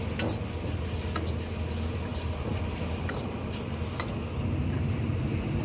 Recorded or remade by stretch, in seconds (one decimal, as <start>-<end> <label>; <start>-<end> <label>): 0.0-5.6 recorded